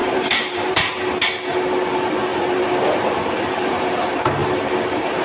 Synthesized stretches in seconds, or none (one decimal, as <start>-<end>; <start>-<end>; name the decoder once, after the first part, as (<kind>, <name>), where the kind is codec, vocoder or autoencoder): 0.0-0.9 (vocoder, BigVGAN v2); 2.3-4.0